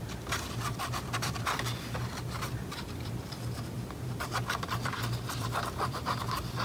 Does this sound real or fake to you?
fake